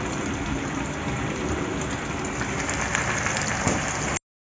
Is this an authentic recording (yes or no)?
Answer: yes